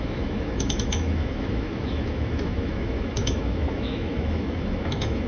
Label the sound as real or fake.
fake